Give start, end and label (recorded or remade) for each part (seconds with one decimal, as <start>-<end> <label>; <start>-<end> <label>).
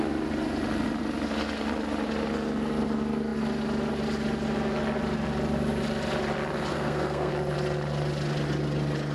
0.0-6.7 recorded; 6.7-7.3 remade; 7.3-9.1 recorded